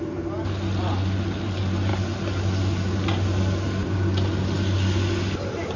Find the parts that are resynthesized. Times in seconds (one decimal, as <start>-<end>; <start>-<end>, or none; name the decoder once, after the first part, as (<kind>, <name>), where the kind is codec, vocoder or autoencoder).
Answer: none